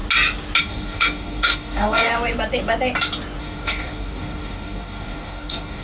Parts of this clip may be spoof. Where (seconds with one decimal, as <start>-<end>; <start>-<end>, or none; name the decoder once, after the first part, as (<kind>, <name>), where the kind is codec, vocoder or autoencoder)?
0.6-2.1 (codec, DAC); 3.4-5.8